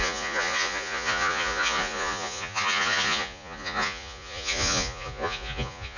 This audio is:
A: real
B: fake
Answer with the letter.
B